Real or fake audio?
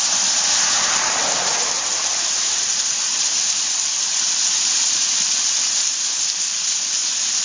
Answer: fake